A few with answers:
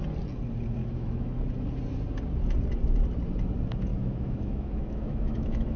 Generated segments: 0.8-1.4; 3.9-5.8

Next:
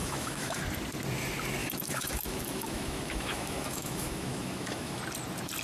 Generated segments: 0.0-0.6; 1.6-5.0

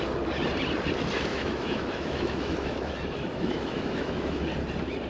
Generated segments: 1.3-4.4

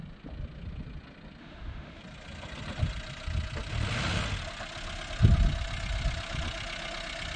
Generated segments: 1.4-2.0

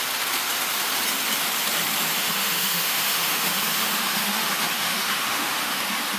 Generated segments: 2.1-5.8

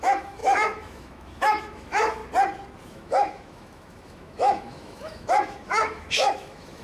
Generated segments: 0.0-2.2; 2.9-6.8

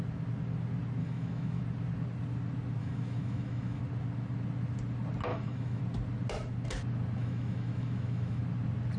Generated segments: 1.0-1.6; 2.8-3.8; 5.3-5.8; 7.2-8.4